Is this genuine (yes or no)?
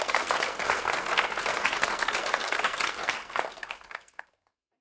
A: no